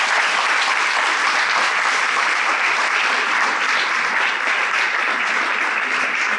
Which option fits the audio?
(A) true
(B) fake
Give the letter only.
B